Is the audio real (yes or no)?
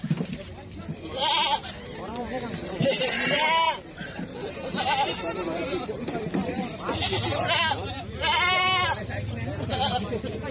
no